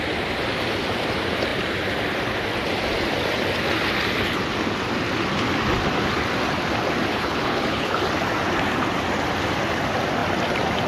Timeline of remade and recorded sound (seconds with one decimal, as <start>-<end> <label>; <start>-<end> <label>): 0.0-7.1 recorded; 7.1-8.0 remade; 8.0-10.9 recorded